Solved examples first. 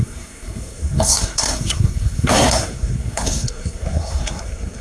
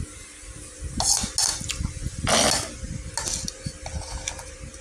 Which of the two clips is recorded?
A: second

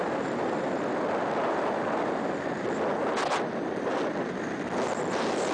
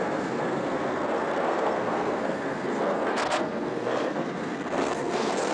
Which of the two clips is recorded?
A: first